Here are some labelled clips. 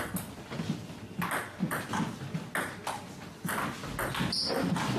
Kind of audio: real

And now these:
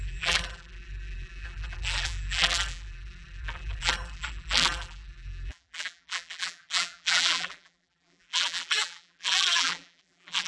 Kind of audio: fake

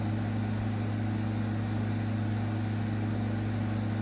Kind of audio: real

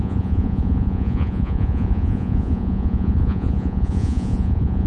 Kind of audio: fake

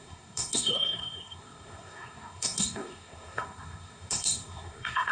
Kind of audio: fake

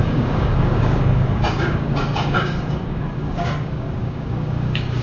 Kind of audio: fake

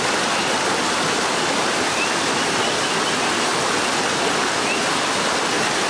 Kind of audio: real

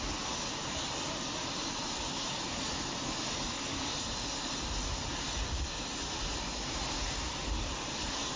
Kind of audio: real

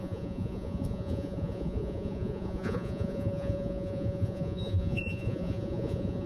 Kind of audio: fake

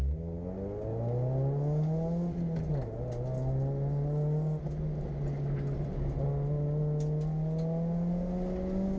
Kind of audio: real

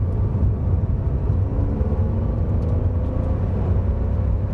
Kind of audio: real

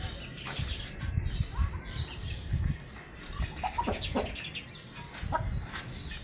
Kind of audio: real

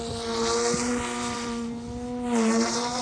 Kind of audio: real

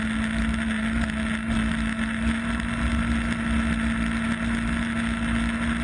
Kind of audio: real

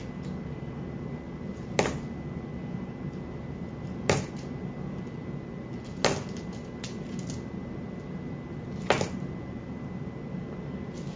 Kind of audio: real